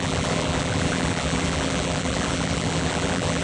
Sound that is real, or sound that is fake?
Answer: fake